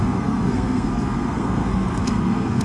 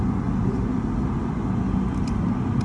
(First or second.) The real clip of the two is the second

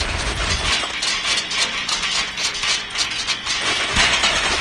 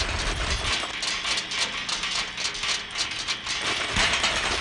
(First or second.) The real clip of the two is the second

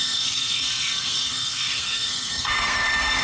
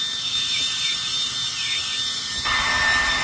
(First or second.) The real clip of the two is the second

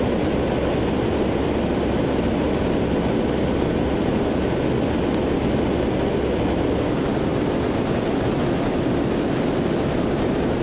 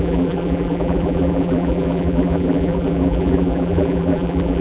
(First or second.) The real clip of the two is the first